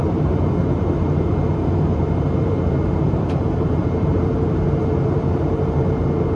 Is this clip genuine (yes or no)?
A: no